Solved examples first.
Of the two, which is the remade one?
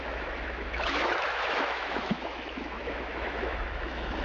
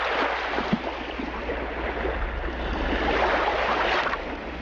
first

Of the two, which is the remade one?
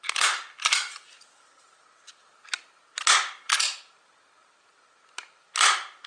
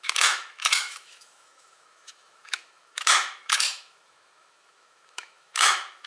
second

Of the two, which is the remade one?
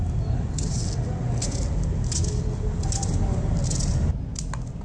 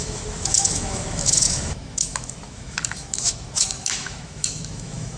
second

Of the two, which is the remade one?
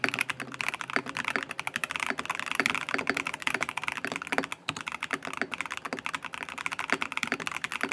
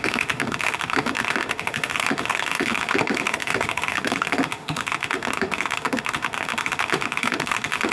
second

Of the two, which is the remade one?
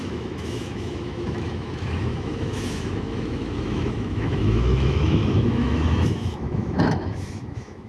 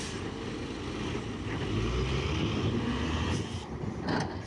first